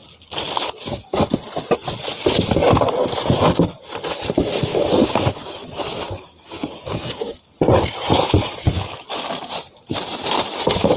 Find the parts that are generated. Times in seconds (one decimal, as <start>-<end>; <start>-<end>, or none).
4.7-7.5